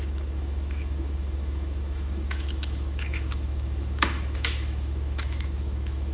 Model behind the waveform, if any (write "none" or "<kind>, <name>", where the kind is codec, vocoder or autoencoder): autoencoder, DAC-VAE